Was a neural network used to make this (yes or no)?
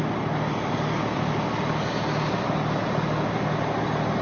no